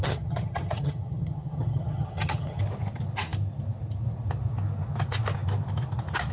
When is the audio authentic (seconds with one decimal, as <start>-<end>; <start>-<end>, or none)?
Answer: 2.6-6.3